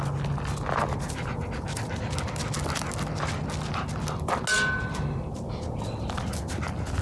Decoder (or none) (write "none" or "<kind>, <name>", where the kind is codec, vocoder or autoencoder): none